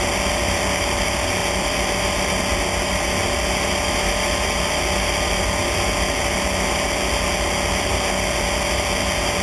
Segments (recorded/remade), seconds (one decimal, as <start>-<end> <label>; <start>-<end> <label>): 0.0-1.4 recorded; 1.4-2.1 remade; 2.1-9.4 recorded